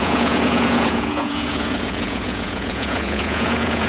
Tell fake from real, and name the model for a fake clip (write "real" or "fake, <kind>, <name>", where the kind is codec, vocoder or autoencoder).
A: fake, vocoder, Vocos